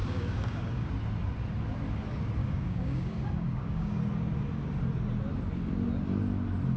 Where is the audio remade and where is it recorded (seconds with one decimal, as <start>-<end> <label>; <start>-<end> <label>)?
0.0-0.9 remade; 0.9-2.4 recorded; 2.4-4.0 remade; 4.0-6.8 recorded